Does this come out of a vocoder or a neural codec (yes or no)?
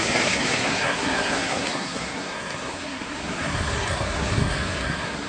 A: yes